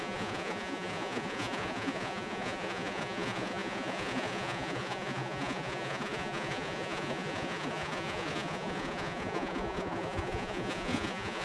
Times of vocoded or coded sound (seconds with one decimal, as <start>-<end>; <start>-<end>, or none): 0.0-11.4